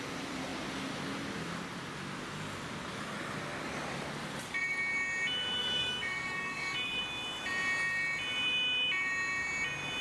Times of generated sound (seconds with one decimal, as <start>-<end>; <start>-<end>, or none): 5.6-7.0